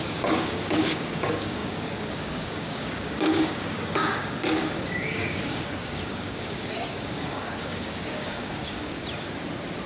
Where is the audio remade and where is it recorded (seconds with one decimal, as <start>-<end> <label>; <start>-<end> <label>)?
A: 0.0-9.0 remade; 9.0-9.9 recorded

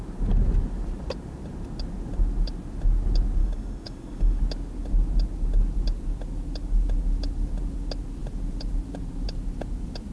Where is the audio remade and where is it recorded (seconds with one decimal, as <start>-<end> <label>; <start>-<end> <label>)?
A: 0.0-3.4 recorded; 3.4-4.4 remade; 4.4-10.1 recorded

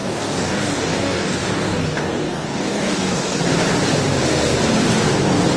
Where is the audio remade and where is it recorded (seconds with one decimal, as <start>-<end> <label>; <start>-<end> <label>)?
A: 0.0-3.4 remade; 3.4-5.6 recorded

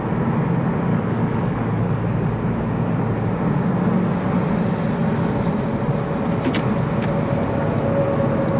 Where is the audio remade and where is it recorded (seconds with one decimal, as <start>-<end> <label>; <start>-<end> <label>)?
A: 0.0-0.9 recorded; 0.9-2.0 remade; 2.0-8.6 recorded